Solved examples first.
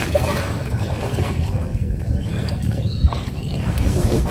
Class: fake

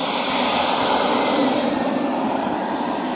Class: real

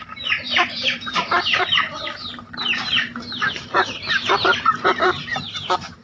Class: fake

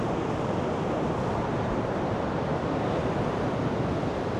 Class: real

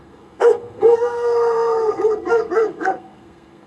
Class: fake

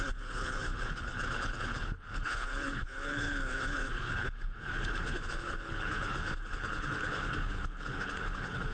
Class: fake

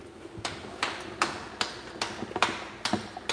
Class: real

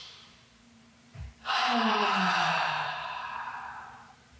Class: fake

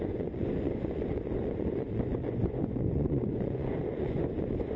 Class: fake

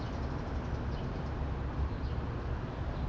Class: real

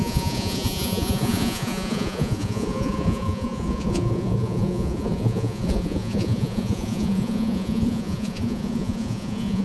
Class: fake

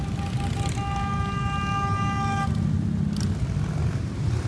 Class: real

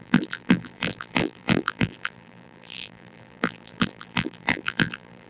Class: fake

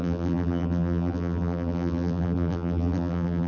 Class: fake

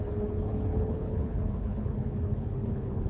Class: fake